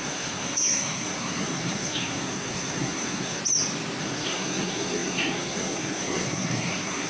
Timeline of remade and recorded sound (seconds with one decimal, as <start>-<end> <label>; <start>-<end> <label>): 0.0-3.4 remade; 3.4-4.0 recorded; 4.0-7.1 remade